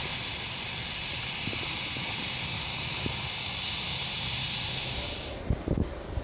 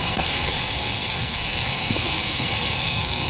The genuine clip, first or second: first